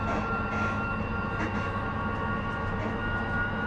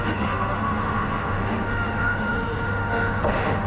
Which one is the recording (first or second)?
first